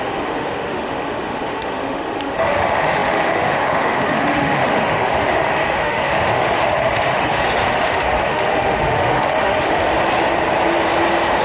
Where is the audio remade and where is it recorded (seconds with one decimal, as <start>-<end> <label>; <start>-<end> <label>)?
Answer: 0.0-9.8 remade; 9.8-11.4 recorded